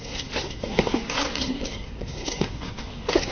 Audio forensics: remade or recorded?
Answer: remade